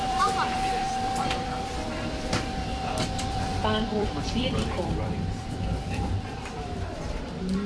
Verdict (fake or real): fake